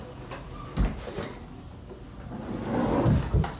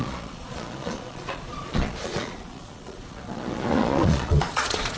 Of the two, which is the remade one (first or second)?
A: second